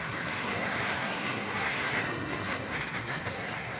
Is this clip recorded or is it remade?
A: remade